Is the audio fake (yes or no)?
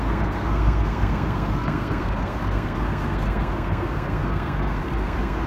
yes